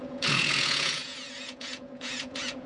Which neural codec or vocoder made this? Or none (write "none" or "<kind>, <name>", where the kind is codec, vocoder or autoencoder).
vocoder, Vocos